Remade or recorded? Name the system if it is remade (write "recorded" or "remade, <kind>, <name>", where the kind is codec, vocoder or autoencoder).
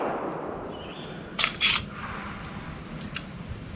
recorded